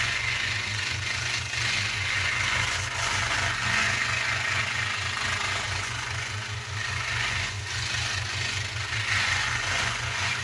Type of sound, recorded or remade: remade